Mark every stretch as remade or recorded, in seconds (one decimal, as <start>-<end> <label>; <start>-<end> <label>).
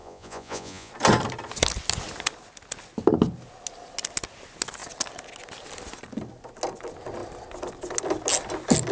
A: 0.0-0.9 remade; 0.9-8.9 recorded